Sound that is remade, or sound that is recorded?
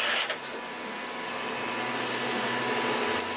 recorded